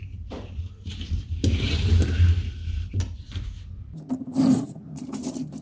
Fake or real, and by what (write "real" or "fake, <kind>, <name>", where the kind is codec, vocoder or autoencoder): fake, vocoder, BigVGAN v2